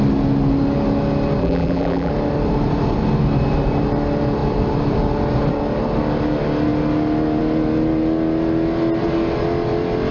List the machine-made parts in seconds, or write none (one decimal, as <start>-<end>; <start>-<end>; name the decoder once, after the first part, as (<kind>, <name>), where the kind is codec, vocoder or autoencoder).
1.4-2.1 (vocoder, BigVGAN v2)